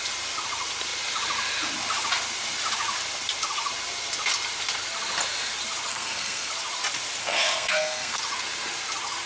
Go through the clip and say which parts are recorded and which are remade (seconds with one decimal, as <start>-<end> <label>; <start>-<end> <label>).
0.0-5.9 recorded; 5.9-6.5 remade; 6.5-7.2 recorded; 7.2-8.2 remade; 8.2-9.3 recorded